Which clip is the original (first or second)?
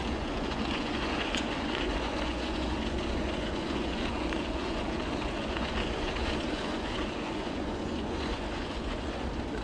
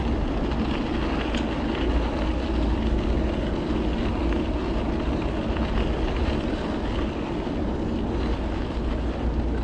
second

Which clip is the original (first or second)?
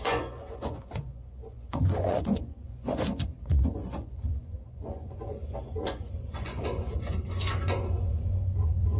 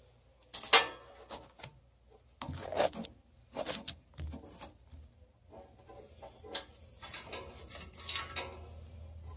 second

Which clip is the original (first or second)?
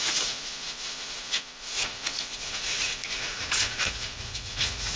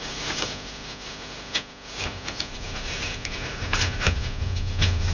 second